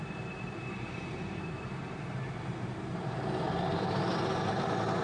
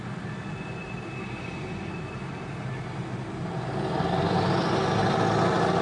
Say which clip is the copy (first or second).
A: first